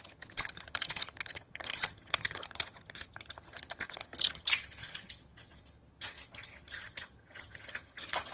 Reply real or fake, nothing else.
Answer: fake